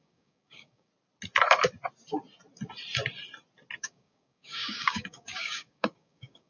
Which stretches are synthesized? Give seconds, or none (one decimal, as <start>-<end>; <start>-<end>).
0.0-0.9; 3.8-6.5